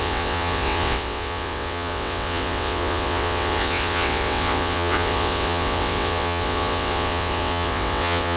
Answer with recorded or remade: remade